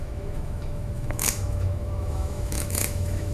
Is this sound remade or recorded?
remade